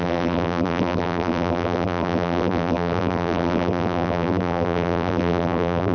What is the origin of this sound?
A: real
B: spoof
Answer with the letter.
B